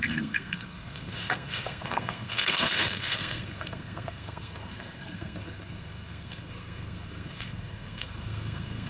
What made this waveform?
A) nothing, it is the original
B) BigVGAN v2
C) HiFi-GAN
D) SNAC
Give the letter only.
D